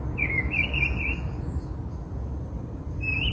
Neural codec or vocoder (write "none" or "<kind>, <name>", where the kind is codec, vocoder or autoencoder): none